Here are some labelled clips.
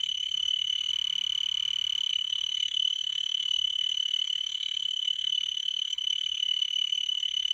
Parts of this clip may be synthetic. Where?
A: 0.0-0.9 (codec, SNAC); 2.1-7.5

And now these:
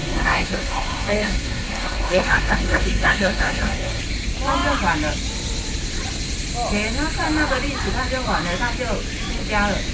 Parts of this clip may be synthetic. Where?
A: 0.0-4.0 (codec, SNAC)

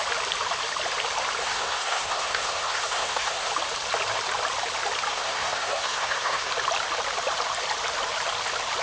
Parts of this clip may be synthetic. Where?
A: 1.4-3.5 (codec, SNAC); 5.1-6.5

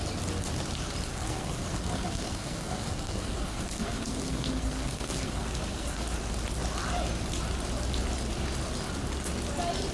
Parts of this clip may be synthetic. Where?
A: 1.1-6.0 (codec, SNAC)

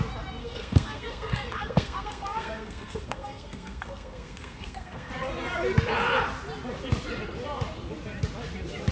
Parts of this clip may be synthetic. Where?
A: 0.4-5.1 (codec, SNAC)

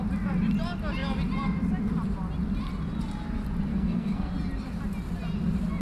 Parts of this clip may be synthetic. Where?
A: 3.7-4.3 (codec, SNAC)